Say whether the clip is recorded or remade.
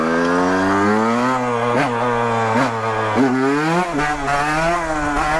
recorded